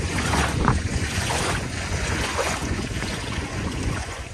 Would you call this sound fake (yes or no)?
yes